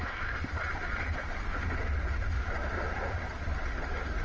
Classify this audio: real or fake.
real